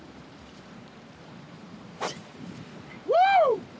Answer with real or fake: fake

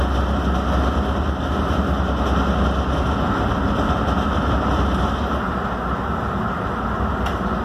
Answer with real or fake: real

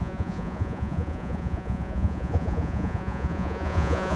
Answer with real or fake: fake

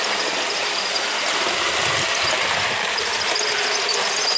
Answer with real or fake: real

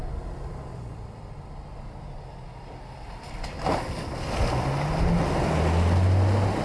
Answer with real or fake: real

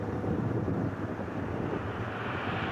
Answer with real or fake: real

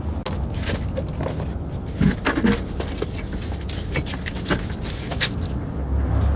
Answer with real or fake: real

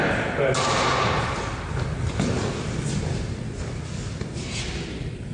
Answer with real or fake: real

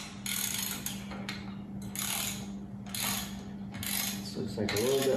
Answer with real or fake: real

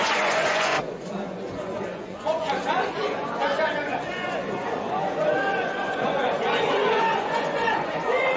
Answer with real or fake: fake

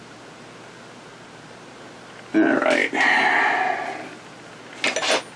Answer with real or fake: real